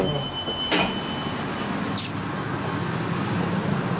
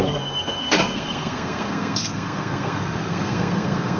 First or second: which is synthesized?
second